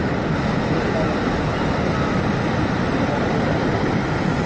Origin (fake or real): real